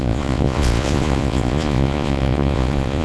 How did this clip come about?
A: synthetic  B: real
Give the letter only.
A